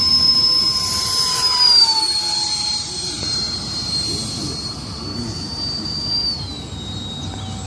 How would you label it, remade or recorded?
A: remade